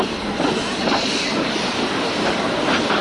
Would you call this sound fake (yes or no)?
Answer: no